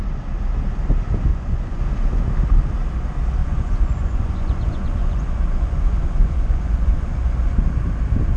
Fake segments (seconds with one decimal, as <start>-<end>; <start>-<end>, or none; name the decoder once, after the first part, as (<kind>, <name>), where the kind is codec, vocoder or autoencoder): 1.3-1.8 (vocoder, Vocos); 3.4-7.6